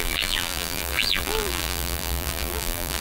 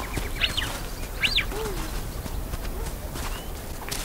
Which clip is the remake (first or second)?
first